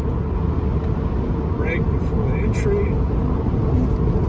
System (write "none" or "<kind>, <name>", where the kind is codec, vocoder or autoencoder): none